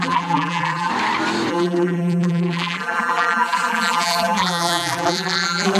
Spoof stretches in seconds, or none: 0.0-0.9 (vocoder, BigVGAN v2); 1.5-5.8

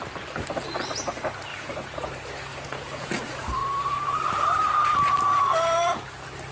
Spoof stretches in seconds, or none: 1.5-2.1 (vocoder, Vocos); 2.5-3.1

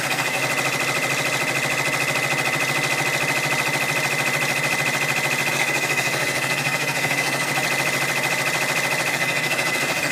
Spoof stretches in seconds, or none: 0.0-0.4 (codec, SNAC); 5.5-7.5; 9.1-10.1